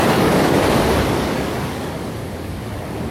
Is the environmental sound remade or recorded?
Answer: remade